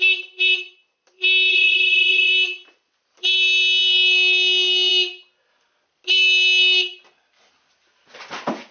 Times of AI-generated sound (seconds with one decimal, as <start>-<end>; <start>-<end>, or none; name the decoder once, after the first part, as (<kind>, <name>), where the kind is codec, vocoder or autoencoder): 1.5-2.3 (vocoder, HiFi-GAN)